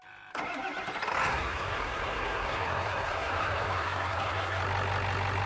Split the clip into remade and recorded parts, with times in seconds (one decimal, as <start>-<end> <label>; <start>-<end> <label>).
0.0-1.3 recorded; 1.3-4.6 remade; 4.6-5.5 recorded